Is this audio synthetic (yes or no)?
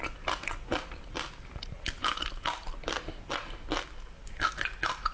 no